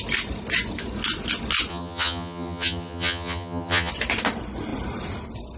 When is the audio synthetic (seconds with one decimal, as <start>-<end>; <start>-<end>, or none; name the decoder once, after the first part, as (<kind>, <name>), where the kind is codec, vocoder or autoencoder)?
1.7-3.9 (vocoder, HiFi-GAN)